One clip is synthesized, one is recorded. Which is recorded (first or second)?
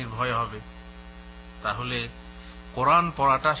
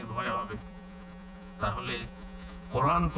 first